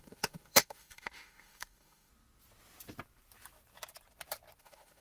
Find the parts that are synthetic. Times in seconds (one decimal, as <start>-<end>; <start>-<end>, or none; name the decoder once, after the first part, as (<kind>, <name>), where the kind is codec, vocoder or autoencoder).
0.0-2.1 (autoencoder, DAC-VAE); 4.6-5.0